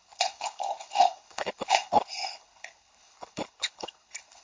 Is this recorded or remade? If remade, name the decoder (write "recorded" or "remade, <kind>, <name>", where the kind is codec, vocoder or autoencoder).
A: remade, codec, HILCodec